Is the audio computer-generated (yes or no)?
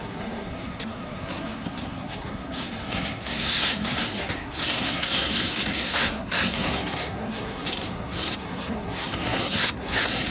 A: yes